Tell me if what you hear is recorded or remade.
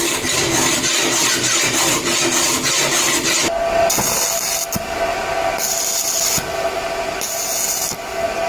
recorded